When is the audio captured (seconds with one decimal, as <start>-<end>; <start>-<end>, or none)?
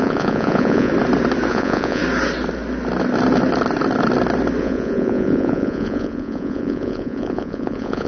0.9-1.5; 2.0-4.6